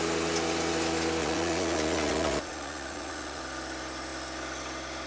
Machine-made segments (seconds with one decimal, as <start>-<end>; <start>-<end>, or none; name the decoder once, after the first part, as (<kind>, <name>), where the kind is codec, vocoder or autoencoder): 1.2-3.4 (vocoder, Vocos)